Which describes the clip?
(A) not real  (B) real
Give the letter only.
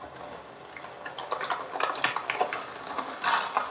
B